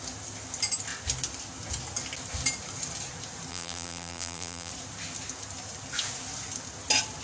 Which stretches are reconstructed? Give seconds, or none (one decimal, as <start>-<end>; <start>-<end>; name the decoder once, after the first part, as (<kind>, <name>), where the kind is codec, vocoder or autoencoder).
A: 3.5-4.7 (vocoder, BigVGAN v2)